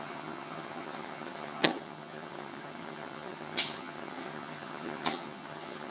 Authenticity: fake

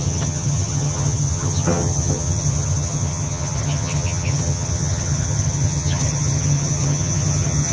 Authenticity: fake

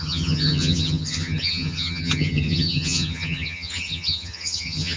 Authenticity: fake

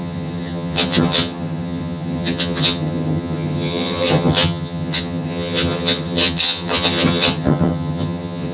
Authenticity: fake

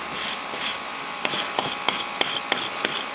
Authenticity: real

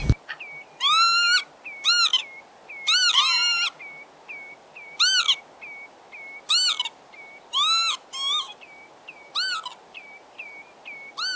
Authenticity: real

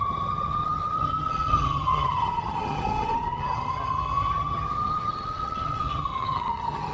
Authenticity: fake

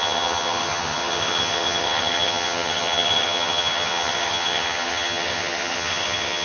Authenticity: fake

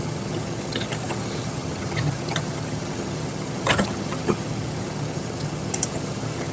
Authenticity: fake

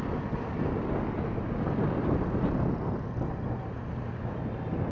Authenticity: real